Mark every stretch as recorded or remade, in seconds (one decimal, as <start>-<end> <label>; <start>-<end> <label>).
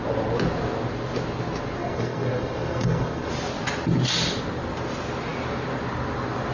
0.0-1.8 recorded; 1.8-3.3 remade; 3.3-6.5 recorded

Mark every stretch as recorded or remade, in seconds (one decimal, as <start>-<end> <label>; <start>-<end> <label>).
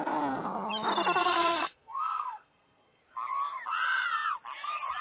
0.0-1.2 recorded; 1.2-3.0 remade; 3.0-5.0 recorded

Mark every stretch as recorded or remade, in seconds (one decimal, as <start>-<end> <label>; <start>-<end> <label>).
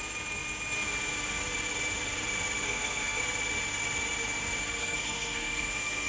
0.0-2.6 recorded; 2.6-3.2 remade; 3.2-4.8 recorded; 4.8-6.1 remade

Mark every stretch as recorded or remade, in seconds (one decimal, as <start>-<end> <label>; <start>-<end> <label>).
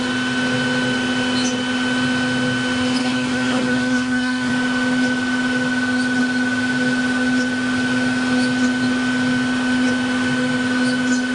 0.0-3.0 recorded; 3.0-4.5 remade; 4.5-11.3 recorded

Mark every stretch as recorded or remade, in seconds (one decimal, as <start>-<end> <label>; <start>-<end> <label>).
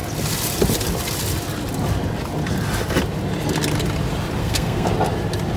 0.0-4.4 recorded; 4.4-4.9 remade; 4.9-5.6 recorded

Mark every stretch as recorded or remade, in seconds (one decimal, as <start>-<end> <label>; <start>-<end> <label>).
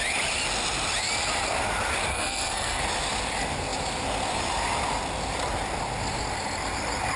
0.0-2.1 recorded; 2.1-2.8 remade; 2.8-7.2 recorded